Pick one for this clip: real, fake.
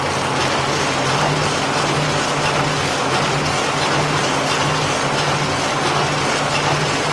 real